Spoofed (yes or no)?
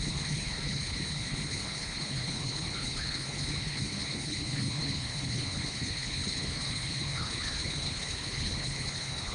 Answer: yes